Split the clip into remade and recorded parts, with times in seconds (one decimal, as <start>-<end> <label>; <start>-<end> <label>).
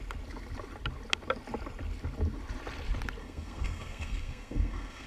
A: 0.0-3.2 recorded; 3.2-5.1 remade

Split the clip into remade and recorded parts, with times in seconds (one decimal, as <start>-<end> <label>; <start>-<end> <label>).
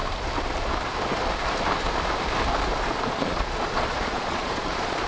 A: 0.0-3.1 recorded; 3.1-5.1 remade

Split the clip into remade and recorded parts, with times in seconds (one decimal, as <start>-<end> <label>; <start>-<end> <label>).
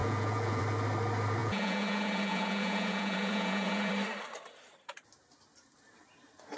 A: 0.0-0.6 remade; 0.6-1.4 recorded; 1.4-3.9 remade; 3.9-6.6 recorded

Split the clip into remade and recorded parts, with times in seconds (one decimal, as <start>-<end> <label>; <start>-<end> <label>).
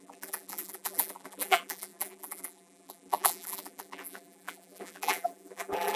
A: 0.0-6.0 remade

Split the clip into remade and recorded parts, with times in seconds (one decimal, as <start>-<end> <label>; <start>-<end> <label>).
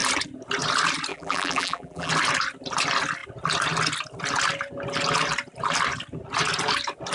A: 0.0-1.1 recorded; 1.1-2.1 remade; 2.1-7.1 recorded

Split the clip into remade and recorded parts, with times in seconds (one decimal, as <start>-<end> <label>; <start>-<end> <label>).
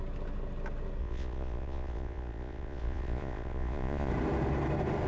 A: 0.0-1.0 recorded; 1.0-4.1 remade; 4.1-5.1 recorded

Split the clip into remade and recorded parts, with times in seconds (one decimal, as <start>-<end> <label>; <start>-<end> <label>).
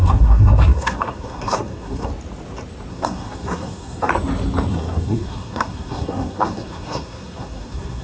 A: 0.0-2.1 remade; 2.1-2.9 recorded; 2.9-4.1 remade; 4.1-4.7 recorded; 4.7-8.0 remade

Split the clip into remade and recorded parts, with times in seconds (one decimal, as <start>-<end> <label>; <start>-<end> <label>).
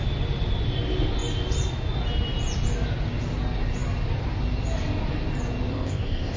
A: 0.0-5.7 recorded; 5.7-6.4 remade